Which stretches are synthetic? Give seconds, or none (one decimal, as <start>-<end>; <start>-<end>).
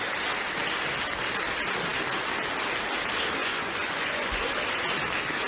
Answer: 3.4-4.4